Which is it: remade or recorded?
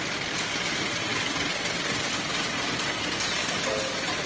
recorded